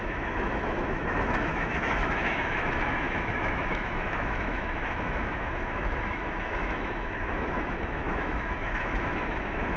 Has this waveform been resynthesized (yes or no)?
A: yes